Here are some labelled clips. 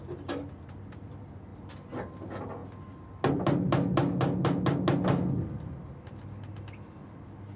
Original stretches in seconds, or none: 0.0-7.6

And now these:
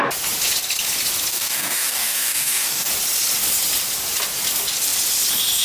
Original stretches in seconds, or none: 0.0-1.3; 2.9-5.6